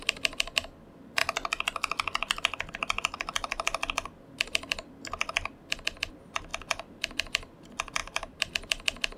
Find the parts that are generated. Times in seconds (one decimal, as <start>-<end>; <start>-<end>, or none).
8.0-8.5